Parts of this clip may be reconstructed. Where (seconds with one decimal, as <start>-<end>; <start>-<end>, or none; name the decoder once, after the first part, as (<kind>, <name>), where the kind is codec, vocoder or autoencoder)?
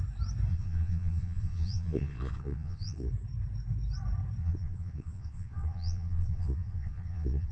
0.5-3.1 (vocoder, Vocos); 4.4-7.5